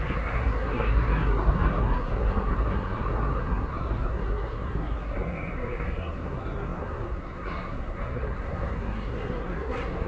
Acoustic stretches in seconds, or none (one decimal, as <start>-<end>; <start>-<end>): none